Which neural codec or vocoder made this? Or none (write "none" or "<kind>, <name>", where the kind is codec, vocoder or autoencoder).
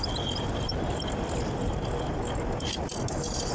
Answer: none